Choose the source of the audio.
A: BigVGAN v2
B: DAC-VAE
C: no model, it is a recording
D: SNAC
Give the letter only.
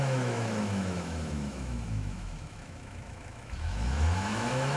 B